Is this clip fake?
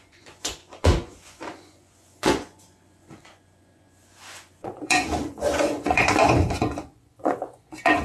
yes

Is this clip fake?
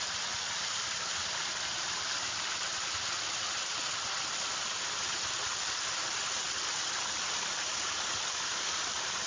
no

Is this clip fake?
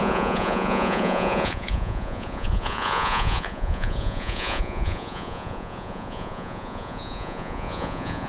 yes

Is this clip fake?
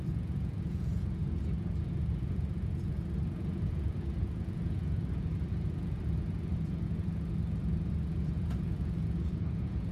yes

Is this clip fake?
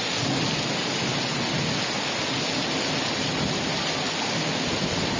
no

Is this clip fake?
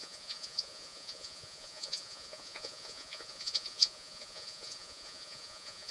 yes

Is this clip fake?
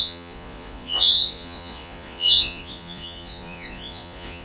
yes